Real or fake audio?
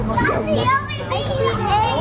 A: real